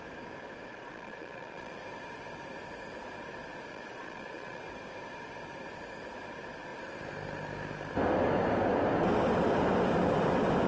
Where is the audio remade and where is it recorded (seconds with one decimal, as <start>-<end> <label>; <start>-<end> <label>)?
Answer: 0.0-0.7 recorded; 0.7-1.8 remade; 1.8-3.7 recorded; 3.7-4.6 remade; 4.6-10.7 recorded